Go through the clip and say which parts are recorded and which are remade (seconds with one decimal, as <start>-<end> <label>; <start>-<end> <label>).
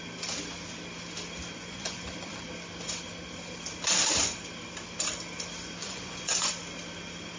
0.0-1.6 recorded; 1.6-2.3 remade; 2.3-5.8 recorded; 5.8-6.5 remade; 6.5-7.4 recorded